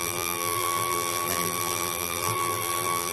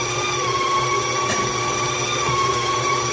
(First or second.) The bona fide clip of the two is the second